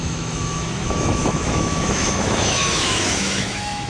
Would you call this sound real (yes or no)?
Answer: no